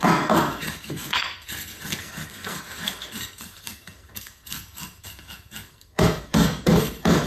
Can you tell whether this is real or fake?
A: fake